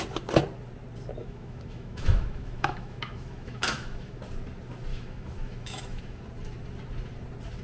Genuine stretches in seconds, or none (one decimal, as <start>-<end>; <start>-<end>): 0.0-1.2; 4.2-4.9; 6.2-7.6